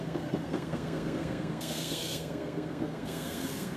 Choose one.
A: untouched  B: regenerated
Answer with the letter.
B